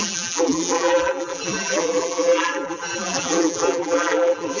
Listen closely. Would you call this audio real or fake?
fake